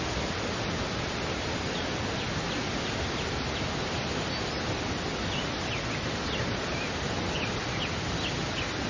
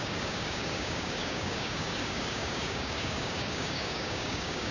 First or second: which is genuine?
first